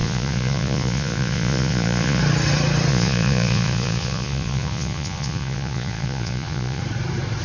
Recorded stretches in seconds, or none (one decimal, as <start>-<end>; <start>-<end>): 2.2-2.9; 6.8-7.4